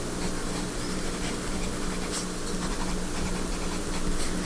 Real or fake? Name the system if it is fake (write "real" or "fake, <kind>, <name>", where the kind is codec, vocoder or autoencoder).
real